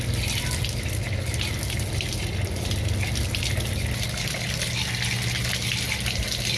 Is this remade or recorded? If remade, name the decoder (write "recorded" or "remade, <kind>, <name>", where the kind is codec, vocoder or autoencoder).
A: recorded